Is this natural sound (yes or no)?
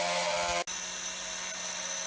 yes